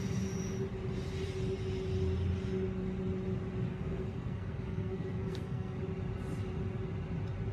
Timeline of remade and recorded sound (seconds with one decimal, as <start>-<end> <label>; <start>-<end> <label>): 0.0-3.7 recorded; 3.7-5.8 remade; 5.8-7.5 recorded